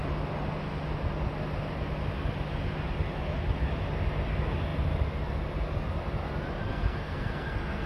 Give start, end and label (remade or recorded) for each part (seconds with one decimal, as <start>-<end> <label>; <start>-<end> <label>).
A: 0.0-6.7 recorded; 6.7-7.9 remade